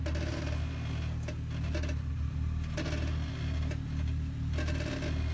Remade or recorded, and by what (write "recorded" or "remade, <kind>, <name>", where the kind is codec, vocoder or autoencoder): recorded